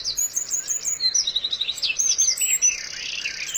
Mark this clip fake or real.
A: real